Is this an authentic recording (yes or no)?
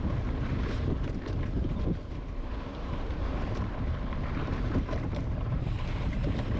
no